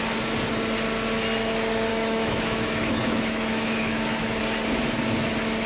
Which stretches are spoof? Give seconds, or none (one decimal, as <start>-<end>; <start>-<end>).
1.9-4.4